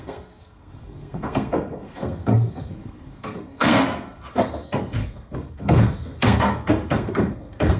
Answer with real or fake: fake